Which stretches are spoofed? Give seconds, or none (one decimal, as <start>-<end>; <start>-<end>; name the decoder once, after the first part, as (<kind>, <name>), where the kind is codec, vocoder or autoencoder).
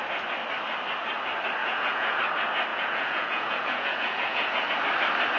1.6-2.2 (vocoder, Vocos); 2.7-4.7